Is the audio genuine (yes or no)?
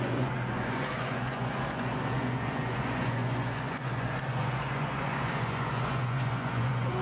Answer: no